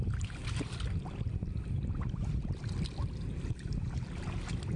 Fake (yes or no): no